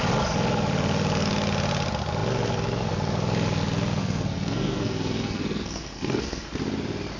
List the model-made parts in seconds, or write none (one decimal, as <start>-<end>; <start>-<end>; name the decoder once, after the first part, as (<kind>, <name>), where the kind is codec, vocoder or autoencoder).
4.0-6.5 (codec, SNAC)